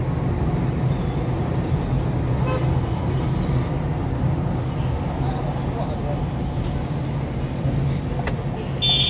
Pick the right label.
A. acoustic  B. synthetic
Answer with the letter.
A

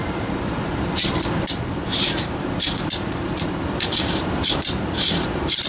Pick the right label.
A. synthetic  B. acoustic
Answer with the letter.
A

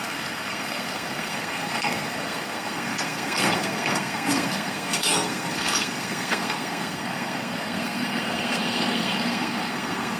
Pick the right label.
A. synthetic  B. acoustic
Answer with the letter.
A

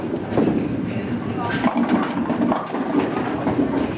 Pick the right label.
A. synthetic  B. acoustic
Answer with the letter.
B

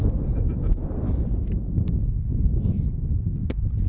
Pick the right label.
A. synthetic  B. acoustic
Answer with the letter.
B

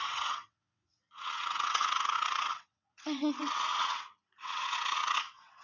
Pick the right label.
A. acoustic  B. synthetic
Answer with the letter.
B